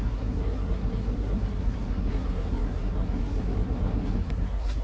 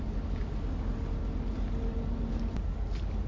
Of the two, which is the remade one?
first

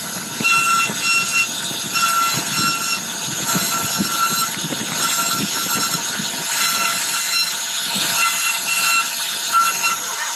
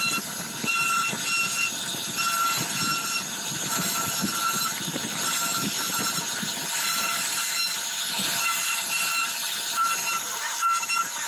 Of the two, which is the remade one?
second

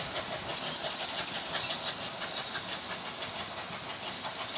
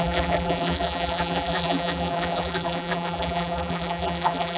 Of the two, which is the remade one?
second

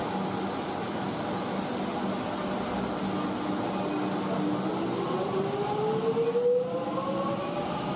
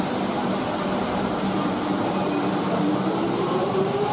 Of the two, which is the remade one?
second